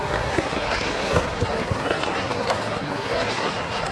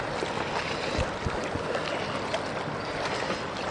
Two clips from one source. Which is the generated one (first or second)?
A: first